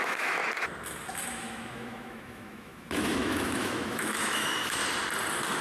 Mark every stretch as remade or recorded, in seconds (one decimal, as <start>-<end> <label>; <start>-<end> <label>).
0.0-0.4 remade; 0.4-1.3 recorded; 1.3-4.8 remade; 4.8-5.6 recorded